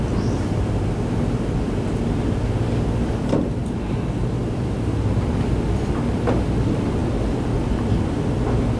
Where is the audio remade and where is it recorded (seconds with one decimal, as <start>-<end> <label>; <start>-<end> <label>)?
0.0-4.4 recorded; 4.4-5.3 remade; 5.3-8.8 recorded